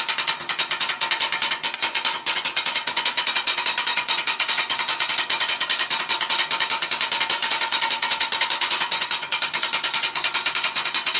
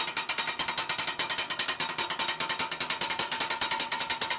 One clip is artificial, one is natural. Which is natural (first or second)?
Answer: second